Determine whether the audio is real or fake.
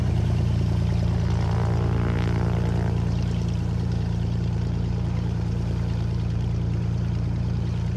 fake